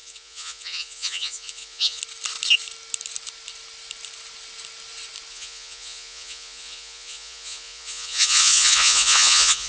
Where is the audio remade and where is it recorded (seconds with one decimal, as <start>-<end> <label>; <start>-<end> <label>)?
0.0-2.0 remade; 2.0-5.3 recorded; 5.3-9.7 remade